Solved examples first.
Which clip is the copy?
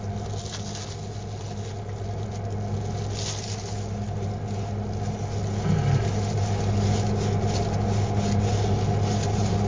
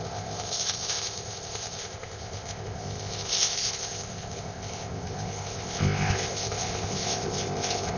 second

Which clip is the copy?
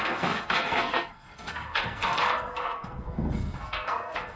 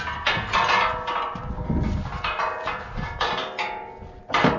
first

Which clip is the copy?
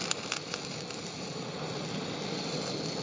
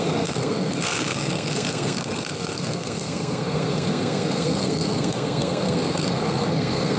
second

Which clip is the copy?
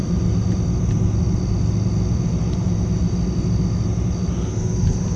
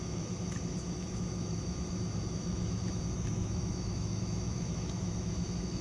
second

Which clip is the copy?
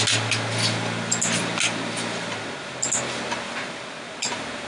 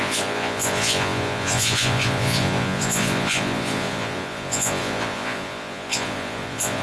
second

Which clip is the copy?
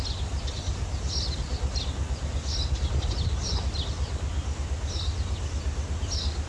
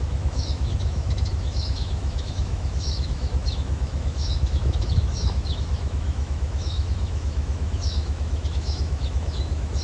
second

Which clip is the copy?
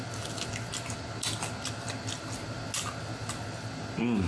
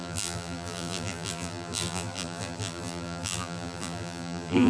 second